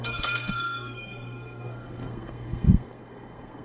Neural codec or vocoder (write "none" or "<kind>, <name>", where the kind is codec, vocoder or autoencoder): codec, SNAC